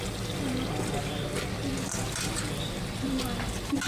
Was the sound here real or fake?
real